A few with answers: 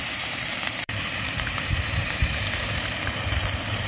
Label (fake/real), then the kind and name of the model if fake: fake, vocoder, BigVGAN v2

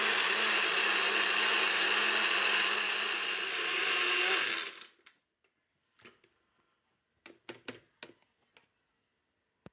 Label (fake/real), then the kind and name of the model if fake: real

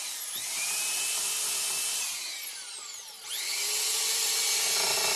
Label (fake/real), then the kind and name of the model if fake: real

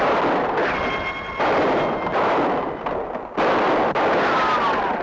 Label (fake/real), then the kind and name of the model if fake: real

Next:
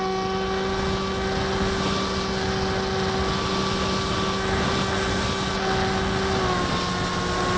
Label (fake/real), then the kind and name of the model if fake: real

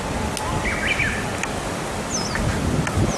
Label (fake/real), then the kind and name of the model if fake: real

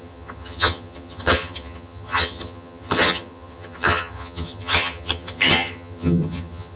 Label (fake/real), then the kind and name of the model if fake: fake, vocoder, HiFi-GAN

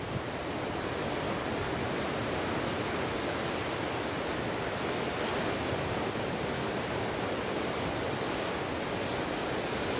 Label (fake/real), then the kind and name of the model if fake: real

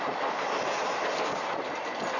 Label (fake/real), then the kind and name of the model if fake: real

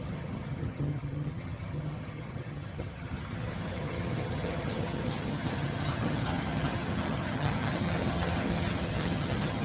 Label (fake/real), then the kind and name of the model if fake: fake, vocoder, HiFi-GAN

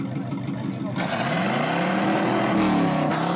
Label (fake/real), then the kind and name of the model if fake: real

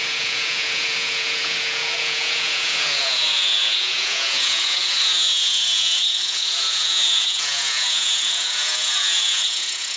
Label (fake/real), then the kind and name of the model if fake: fake, vocoder, Vocos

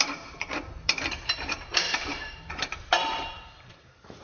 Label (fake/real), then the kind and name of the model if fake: fake, vocoder, BigVGAN v2